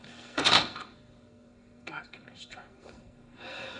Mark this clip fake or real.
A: fake